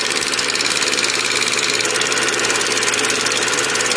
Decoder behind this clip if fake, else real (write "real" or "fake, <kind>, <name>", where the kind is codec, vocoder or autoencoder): fake, vocoder, BigVGAN v2